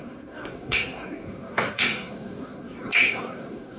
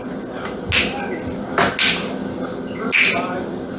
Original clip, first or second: second